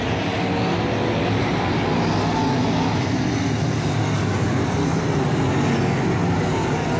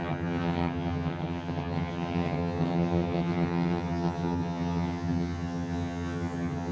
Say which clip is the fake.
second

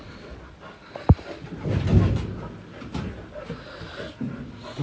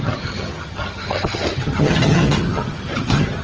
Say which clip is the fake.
second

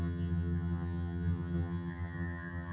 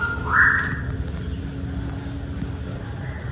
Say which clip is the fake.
first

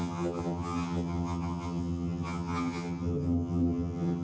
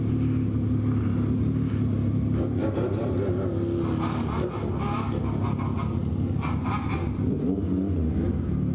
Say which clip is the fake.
first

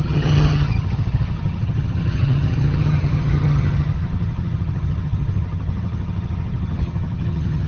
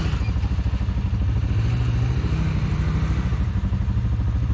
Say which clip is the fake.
first